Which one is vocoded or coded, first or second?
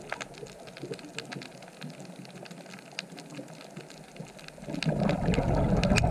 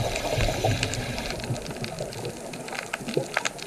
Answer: second